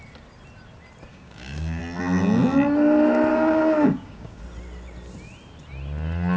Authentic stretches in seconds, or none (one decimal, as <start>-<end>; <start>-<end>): 0.0-1.1; 1.8-3.3; 4.4-6.4